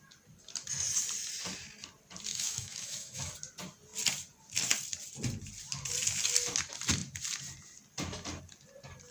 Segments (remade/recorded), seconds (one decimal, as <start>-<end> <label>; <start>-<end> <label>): 0.0-2.3 recorded; 2.3-3.3 remade; 3.3-9.1 recorded